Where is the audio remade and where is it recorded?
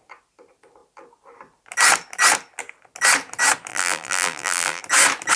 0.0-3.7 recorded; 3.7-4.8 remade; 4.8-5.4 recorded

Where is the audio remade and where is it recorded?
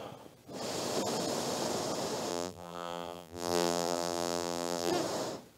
0.0-2.3 recorded; 2.3-4.9 remade; 4.9-5.6 recorded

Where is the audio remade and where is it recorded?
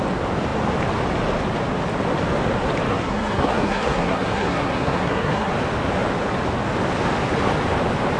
0.0-2.9 recorded; 2.9-5.5 remade; 5.5-8.2 recorded